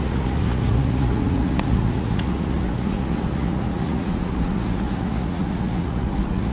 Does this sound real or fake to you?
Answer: fake